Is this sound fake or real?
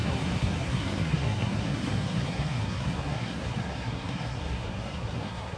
fake